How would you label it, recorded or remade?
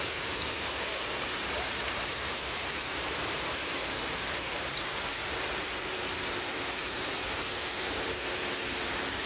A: remade